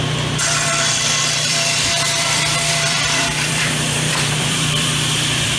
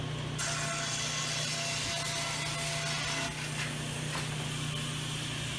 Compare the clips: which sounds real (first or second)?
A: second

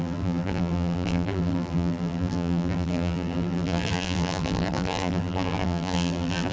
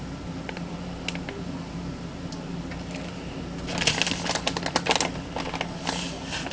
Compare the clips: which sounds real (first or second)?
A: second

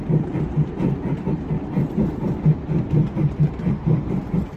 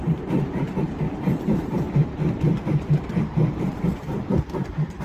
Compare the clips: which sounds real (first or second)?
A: first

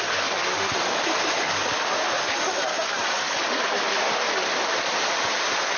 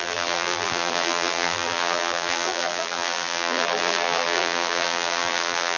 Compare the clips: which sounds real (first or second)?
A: first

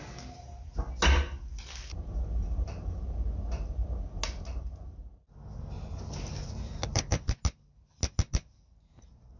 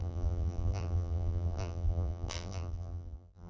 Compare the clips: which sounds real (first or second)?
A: first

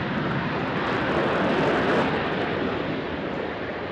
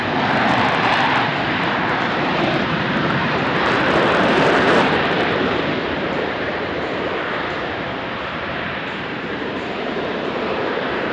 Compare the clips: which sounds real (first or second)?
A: first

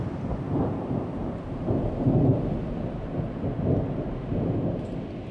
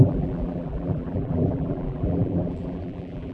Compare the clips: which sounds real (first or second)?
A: first